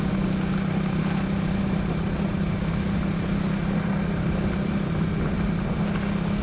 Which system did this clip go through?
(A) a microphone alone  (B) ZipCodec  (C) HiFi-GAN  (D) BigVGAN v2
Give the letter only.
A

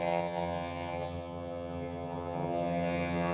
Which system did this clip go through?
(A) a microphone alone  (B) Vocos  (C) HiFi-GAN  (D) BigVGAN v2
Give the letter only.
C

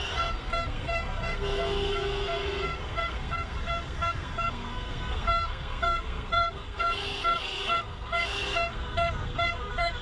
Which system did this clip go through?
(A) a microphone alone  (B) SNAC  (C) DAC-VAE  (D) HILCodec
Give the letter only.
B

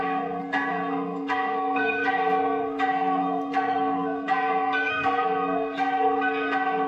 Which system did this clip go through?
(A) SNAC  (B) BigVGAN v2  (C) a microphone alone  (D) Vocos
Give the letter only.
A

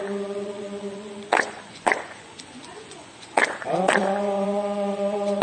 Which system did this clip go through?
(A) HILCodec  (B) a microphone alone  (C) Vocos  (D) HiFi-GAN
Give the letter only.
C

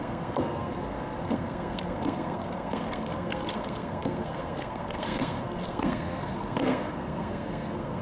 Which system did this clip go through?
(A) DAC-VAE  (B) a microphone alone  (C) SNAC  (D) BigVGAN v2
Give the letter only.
C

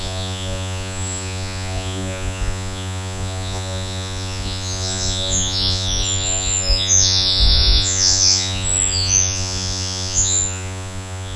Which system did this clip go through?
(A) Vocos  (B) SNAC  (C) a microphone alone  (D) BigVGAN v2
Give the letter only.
A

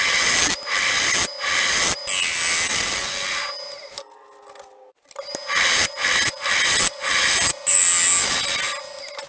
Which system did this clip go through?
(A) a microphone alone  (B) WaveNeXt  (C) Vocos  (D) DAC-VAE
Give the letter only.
A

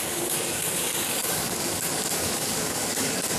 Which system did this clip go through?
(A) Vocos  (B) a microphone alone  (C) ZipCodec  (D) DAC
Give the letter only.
D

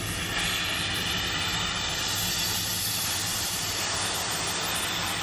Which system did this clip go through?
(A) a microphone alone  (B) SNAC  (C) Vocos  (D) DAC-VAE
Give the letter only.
A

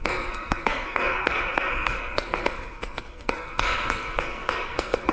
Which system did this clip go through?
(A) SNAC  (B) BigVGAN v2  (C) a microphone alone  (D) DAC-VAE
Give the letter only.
A